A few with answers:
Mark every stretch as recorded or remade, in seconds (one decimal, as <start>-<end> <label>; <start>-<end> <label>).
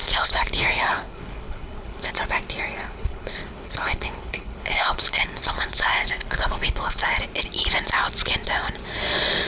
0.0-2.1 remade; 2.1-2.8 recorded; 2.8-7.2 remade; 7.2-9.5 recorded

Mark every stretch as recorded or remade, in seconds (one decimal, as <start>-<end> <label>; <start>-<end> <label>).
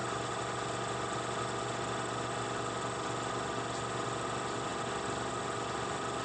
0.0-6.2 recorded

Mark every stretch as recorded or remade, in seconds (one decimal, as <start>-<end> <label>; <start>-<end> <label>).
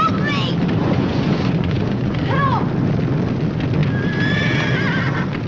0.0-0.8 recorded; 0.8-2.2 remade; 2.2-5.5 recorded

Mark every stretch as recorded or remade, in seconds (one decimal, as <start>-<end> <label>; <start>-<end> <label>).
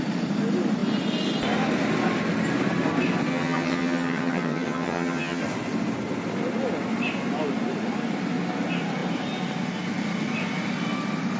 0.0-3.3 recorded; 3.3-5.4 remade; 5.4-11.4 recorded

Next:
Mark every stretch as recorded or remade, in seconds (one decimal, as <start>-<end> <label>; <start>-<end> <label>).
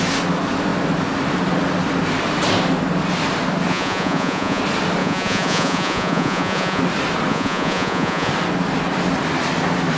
0.0-3.7 recorded; 3.7-4.6 remade; 4.6-5.0 recorded; 5.0-6.8 remade; 6.8-7.3 recorded; 7.3-8.3 remade; 8.3-10.0 recorded